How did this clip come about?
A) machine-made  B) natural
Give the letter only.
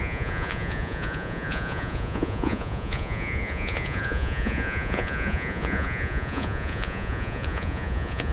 A